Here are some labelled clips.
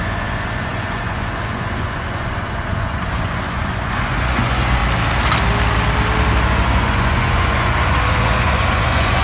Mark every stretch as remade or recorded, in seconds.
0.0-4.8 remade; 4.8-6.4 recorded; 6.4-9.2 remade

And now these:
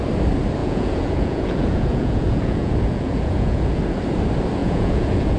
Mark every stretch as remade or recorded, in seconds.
0.0-0.6 recorded; 0.6-3.8 remade; 3.8-4.6 recorded; 4.6-5.4 remade

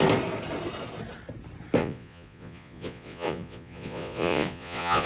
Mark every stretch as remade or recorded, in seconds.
0.0-1.8 recorded; 1.8-5.1 remade

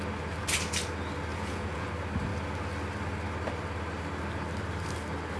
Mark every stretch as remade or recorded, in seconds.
0.0-1.3 recorded; 1.3-1.9 remade; 1.9-5.4 recorded

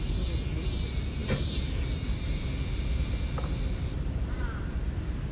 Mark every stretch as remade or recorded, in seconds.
0.0-5.3 recorded

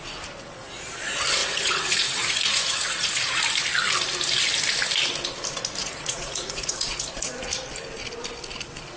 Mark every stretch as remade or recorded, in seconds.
0.0-1.4 recorded; 1.4-3.4 remade; 3.4-5.8 recorded; 5.8-7.3 remade; 7.3-9.0 recorded

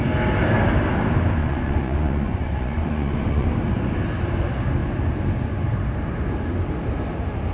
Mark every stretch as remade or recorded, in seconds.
0.0-1.4 recorded; 1.4-3.5 remade; 3.5-7.5 recorded

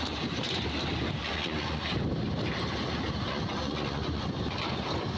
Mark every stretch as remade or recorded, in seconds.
0.0-1.2 recorded; 1.2-1.8 remade; 1.8-3.3 recorded; 3.3-4.4 remade; 4.4-5.2 recorded